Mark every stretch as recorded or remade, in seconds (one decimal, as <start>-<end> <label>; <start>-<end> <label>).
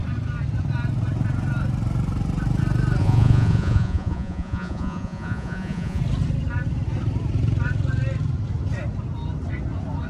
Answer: 0.0-3.0 recorded; 3.0-6.0 remade; 6.0-10.1 recorded